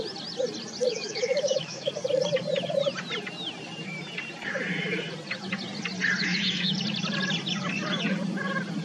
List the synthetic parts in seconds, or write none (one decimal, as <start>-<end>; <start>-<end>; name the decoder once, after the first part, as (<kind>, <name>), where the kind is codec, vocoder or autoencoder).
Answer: 0.9-1.9 (autoencoder, DAC-VAE); 6.2-6.7